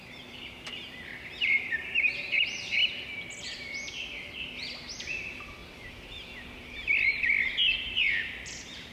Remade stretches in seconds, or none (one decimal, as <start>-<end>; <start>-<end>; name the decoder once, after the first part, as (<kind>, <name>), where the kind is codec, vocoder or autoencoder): 0.0-2.8 (vocoder, BigVGAN v2); 5.0-5.6; 7.8-8.9